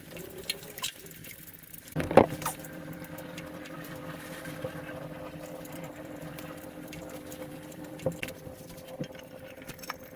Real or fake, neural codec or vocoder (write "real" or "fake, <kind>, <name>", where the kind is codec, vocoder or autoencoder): fake, vocoder, BigVGAN v2